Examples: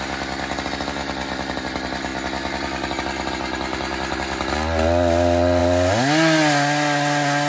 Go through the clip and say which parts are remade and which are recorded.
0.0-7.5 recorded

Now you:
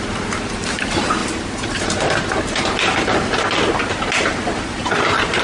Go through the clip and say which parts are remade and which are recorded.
0.0-1.2 remade; 1.2-4.4 recorded; 4.4-5.4 remade